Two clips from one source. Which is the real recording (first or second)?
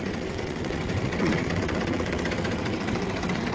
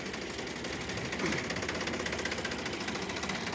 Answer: second